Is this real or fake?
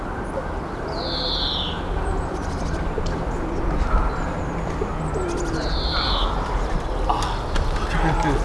real